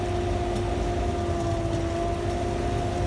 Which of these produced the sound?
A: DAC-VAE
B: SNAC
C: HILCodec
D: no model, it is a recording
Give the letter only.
D